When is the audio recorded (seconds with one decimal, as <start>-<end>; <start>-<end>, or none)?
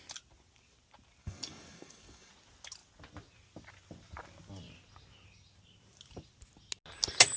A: 0.0-1.2; 2.3-7.4